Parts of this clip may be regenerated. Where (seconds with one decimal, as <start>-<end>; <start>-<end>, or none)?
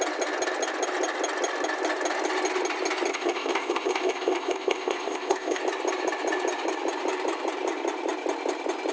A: 3.1-5.6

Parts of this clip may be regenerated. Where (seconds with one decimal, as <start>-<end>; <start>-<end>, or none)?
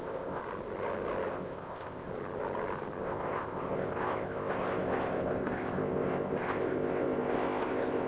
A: 0.0-0.4; 1.3-2.1; 3.0-8.1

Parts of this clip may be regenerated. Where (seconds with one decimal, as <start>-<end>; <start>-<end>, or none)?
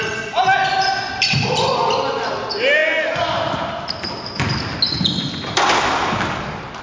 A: none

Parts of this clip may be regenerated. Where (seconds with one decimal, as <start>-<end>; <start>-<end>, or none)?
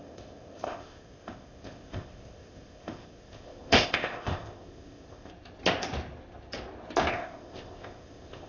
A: 0.0-5.3; 7.1-8.5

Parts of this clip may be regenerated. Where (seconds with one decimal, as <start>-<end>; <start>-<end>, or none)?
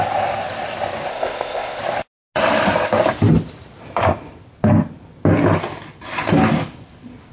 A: 1.1-1.8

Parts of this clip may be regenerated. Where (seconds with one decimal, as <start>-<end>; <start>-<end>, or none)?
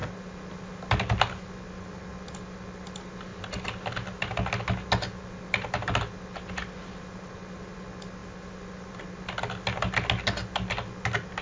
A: none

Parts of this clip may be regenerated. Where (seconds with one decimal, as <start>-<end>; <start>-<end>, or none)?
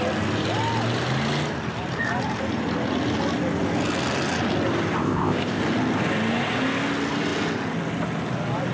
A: 5.0-5.6